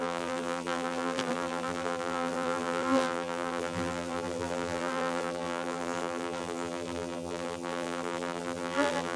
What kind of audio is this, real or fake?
fake